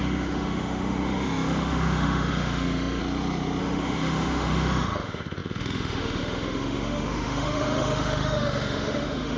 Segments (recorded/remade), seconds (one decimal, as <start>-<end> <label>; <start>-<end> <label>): 0.0-3.0 remade; 3.0-3.6 recorded; 3.6-9.4 remade